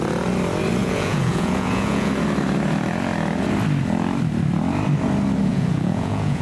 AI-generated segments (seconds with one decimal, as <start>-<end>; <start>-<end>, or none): 0.8-2.1; 5.5-6.4